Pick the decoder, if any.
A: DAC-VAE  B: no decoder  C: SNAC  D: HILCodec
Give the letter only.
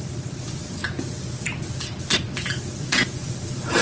B